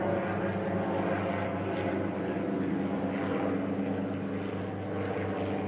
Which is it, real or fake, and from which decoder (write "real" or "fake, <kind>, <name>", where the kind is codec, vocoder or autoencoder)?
real